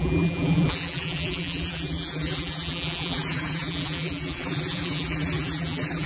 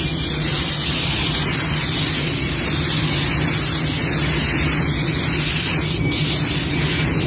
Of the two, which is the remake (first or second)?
first